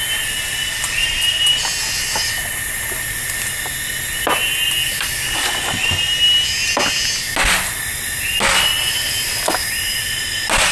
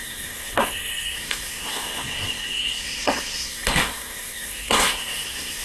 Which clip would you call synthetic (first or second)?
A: second